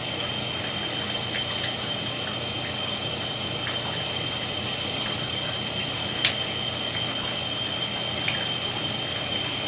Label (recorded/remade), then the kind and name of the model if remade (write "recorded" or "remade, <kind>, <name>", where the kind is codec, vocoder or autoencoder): recorded